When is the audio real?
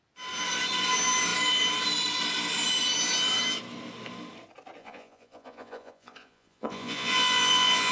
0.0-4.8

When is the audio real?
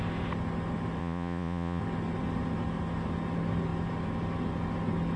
0.0-1.0; 1.8-5.2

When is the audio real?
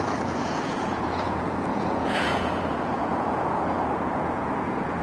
none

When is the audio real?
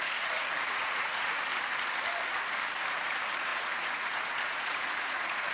1.5-2.9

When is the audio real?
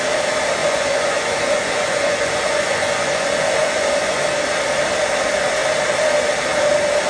0.0-0.6; 4.2-7.1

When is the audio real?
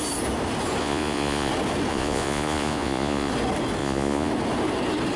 0.0-0.8; 1.5-1.9; 3.3-3.8; 4.3-5.2